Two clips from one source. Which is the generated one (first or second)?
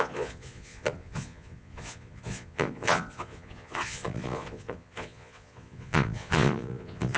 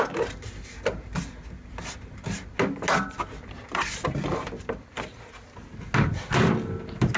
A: first